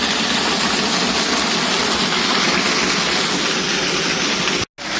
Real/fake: real